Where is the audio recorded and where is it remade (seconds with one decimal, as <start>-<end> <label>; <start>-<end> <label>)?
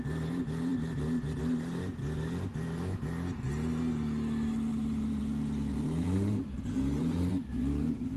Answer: 0.0-4.7 recorded; 4.7-5.2 remade; 5.2-5.7 recorded; 5.7-7.3 remade; 7.3-8.2 recorded